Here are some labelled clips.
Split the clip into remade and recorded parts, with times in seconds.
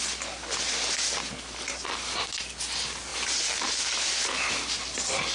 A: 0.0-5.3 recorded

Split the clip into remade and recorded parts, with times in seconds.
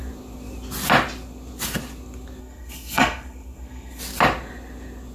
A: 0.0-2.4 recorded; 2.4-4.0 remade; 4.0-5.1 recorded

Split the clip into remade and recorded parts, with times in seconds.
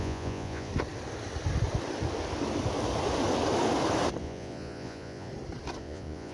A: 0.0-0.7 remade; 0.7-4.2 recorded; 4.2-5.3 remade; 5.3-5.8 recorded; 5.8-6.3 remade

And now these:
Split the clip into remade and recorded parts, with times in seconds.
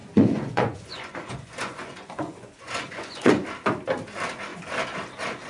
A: 0.0-3.3 remade; 3.3-5.5 recorded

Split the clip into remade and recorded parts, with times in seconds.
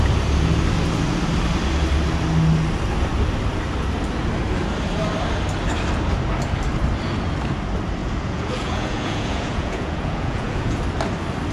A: 0.0-8.0 recorded; 8.0-10.8 remade; 10.8-11.5 recorded